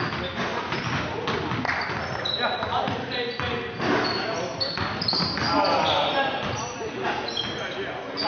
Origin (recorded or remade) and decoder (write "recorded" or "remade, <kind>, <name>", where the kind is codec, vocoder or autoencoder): recorded